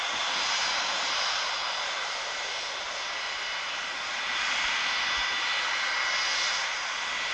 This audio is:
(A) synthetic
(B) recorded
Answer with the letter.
B